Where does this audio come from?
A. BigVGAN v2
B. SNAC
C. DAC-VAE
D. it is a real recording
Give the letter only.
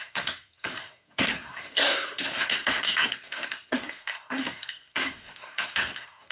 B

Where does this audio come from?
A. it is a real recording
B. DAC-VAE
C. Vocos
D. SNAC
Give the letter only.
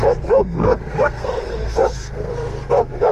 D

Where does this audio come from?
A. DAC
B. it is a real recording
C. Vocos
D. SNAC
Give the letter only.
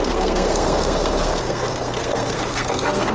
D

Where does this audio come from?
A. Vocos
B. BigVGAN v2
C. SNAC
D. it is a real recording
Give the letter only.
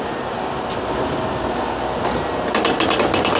D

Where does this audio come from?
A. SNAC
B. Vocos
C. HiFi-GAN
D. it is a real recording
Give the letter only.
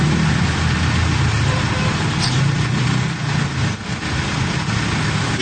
D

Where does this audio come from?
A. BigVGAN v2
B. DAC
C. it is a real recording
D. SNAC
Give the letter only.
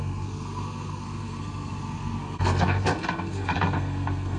D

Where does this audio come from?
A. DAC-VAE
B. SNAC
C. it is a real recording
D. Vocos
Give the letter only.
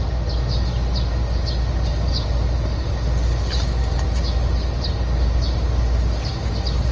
C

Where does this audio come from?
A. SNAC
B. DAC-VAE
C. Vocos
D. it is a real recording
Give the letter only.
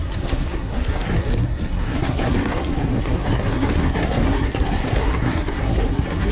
A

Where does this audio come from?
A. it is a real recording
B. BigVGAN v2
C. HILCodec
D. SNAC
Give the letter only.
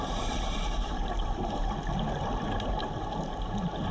A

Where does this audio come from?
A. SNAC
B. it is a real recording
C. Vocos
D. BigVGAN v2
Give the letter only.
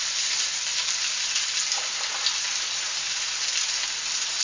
B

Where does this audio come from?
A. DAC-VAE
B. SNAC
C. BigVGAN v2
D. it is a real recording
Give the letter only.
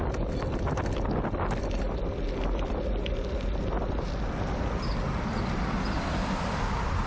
D